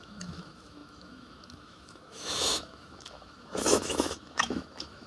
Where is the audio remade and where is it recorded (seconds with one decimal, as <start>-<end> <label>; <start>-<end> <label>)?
0.0-5.1 remade